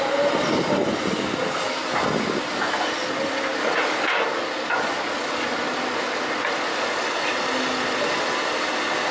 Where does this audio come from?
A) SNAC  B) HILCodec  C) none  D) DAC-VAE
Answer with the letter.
C